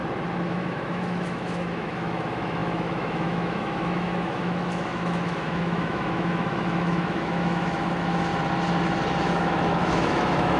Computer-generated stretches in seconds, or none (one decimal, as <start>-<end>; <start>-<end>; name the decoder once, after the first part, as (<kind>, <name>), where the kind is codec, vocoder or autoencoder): 0.5-8.3 (autoencoder, DAC-VAE); 9.2-10.6